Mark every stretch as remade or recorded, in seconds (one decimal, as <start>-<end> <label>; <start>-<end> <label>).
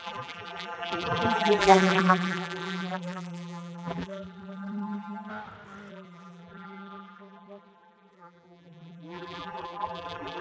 0.0-5.3 remade; 5.3-5.9 recorded; 5.9-10.4 remade